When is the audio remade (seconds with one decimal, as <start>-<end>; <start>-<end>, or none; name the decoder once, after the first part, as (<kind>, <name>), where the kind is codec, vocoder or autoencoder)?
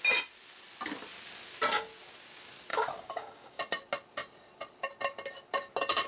2.7-3.6 (codec, DAC)